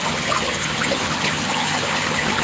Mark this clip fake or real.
fake